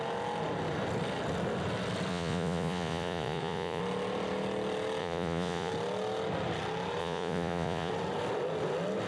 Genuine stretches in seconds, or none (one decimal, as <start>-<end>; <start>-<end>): 0.0-2.1; 3.8-5.0; 5.7-7.0; 7.9-9.1